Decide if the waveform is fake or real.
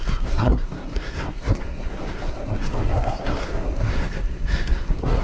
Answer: fake